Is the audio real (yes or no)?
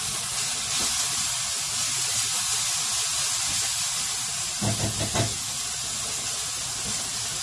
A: yes